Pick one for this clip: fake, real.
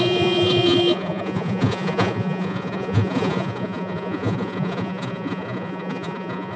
fake